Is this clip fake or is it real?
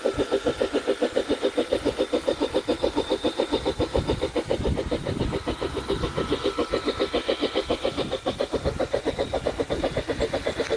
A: real